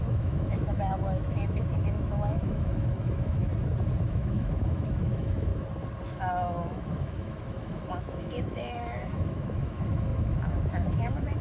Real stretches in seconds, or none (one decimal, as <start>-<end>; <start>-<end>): 3.5-4.0; 5.5-6.0